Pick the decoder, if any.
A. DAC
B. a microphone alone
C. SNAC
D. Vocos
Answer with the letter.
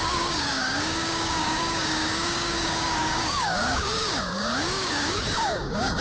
A